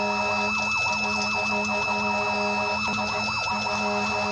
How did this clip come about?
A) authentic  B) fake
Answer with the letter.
A